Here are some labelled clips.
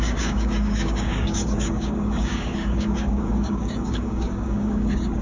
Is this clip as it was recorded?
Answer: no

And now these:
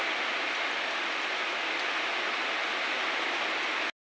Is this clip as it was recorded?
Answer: yes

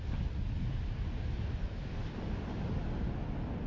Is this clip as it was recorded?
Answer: yes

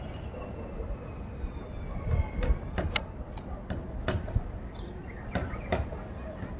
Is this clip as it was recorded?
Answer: yes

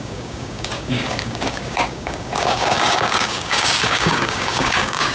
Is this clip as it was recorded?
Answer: no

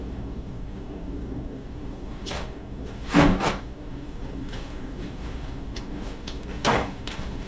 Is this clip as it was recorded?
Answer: no